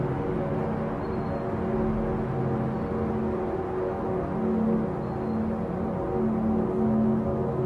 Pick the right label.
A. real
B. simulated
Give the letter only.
A